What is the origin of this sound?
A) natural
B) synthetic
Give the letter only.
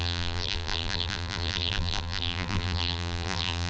B